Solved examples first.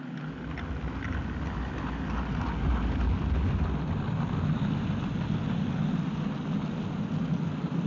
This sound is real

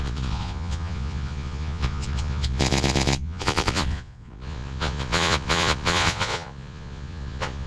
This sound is fake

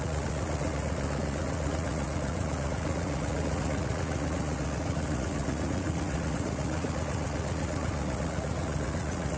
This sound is fake